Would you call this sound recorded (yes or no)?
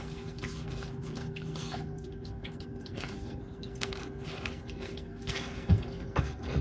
no